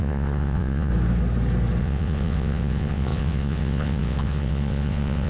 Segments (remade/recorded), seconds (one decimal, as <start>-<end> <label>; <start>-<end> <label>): 0.0-0.9 remade; 0.9-1.8 recorded; 1.8-5.3 remade

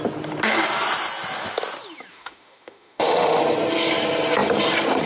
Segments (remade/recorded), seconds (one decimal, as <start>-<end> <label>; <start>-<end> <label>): 0.0-2.1 recorded; 2.1-3.4 remade; 3.4-5.1 recorded

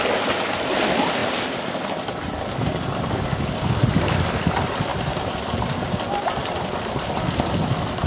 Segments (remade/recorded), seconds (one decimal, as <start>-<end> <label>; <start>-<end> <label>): 0.0-8.1 recorded

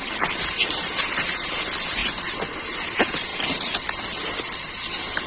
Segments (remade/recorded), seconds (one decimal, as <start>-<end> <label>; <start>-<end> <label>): 0.0-5.3 recorded